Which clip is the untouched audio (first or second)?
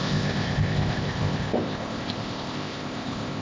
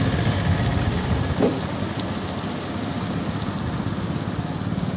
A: second